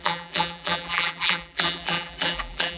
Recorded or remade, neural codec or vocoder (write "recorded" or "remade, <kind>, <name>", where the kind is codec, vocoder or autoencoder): remade, vocoder, BigVGAN v2